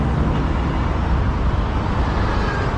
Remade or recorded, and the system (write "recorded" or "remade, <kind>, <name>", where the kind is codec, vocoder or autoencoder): recorded